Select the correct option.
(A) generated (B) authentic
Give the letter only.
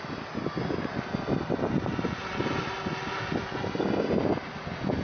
B